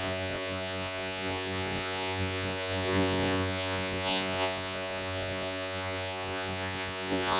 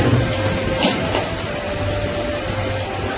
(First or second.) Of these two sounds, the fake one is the first